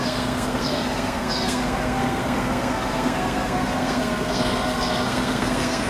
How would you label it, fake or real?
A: fake